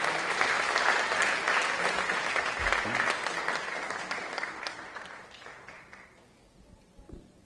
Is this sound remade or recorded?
recorded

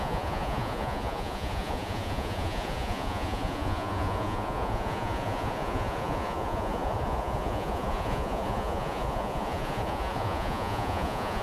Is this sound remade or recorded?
remade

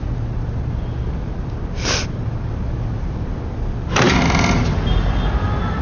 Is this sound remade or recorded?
recorded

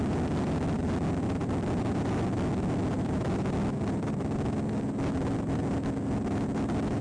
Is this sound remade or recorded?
recorded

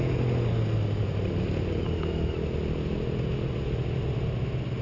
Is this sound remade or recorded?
recorded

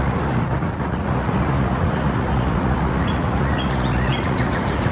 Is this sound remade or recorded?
remade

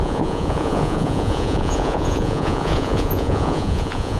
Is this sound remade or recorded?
remade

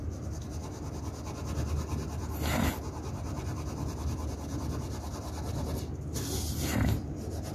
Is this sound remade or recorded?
recorded